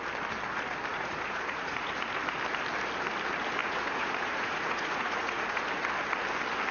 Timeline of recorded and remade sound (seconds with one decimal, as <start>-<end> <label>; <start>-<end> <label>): 0.0-0.9 recorded; 0.9-1.9 remade; 1.9-3.6 recorded; 3.6-5.6 remade; 5.6-6.7 recorded